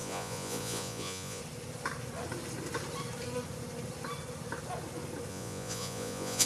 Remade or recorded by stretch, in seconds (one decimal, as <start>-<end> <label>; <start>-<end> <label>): 0.0-1.4 remade; 1.4-5.3 recorded; 5.3-6.5 remade